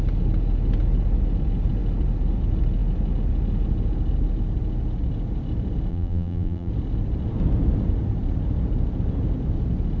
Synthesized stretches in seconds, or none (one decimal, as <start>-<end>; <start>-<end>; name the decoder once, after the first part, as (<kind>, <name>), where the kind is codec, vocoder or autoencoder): 5.9-6.7 (vocoder, BigVGAN v2)